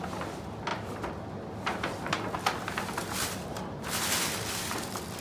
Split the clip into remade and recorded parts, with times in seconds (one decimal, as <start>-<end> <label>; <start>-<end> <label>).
0.0-5.2 recorded